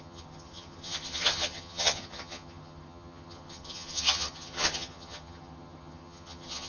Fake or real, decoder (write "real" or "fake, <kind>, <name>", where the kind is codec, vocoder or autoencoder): fake, vocoder, HiFi-GAN